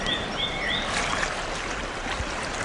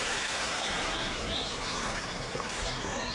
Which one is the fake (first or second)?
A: second